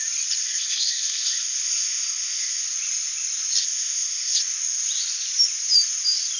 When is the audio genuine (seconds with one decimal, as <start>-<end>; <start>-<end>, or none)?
0.0-0.4; 2.6-3.6; 4.4-6.4